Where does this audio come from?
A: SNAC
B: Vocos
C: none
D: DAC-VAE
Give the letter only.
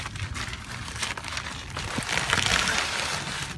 C